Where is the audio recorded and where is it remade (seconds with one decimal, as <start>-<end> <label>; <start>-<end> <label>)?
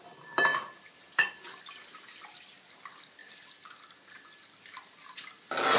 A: 0.0-0.5 recorded; 0.5-1.6 remade; 1.6-5.8 recorded